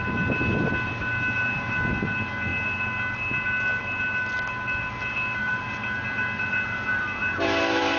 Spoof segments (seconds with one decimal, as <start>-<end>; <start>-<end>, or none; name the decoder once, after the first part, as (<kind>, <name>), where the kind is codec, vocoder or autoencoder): none

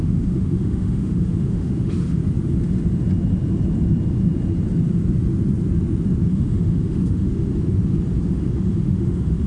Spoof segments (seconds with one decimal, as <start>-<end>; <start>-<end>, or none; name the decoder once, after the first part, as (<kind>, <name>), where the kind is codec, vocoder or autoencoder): 0.0-2.2 (autoencoder, DAC-VAE); 6.3-7.5; 8.3-9.5